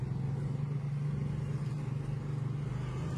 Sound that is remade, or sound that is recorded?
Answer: recorded